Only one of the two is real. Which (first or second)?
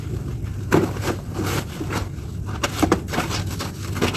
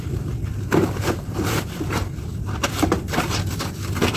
first